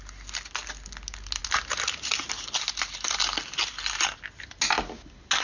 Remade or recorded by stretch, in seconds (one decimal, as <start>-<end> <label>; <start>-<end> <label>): 0.0-5.4 recorded